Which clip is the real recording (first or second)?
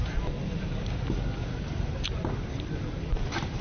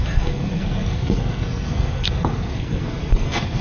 first